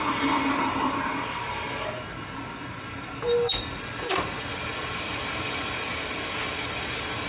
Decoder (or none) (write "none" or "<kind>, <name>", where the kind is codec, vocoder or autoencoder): vocoder, BigVGAN v2